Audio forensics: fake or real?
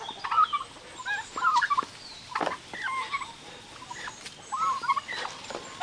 real